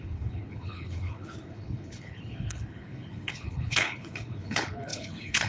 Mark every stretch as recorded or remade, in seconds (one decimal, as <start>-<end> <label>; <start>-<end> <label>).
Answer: 0.0-5.5 remade